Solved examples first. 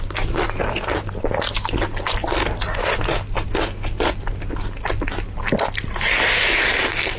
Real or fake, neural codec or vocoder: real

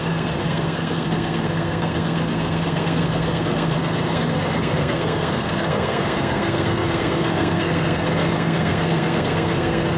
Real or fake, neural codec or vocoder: fake, codec, SNAC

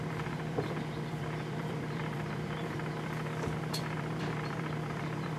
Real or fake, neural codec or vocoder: fake, vocoder, BigVGAN v2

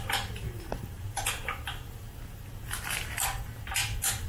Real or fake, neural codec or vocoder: real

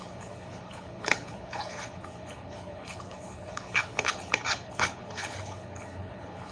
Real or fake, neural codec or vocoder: fake, codec, HILCodec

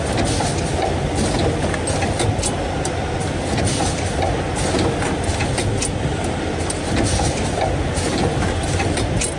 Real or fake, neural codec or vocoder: real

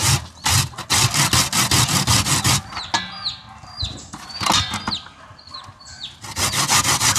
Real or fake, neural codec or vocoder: real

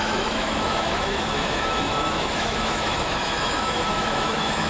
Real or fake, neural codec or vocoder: fake, autoencoder, DAC-VAE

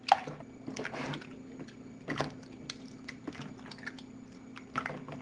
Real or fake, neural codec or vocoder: real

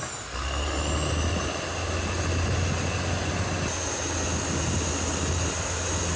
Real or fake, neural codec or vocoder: real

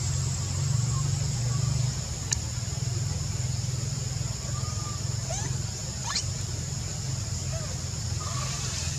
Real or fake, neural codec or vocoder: real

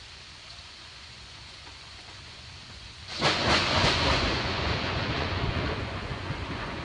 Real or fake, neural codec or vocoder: fake, vocoder, Vocos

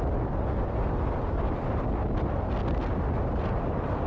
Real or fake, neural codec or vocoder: real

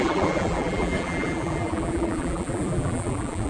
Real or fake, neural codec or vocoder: fake, vocoder, BigVGAN v2